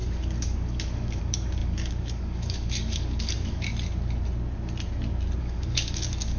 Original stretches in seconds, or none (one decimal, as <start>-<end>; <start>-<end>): 3.7-5.4